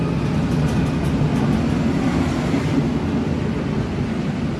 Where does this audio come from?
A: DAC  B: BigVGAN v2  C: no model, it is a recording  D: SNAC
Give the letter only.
C